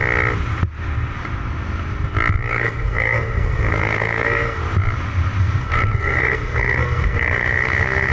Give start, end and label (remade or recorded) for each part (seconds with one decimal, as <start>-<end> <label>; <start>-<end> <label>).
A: 0.0-2.5 recorded; 2.5-4.6 remade; 4.6-5.4 recorded; 5.4-8.1 remade